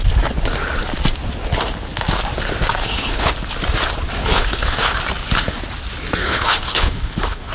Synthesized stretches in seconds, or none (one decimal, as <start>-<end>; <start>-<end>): 2.8-3.3; 4.2-5.0; 6.2-7.5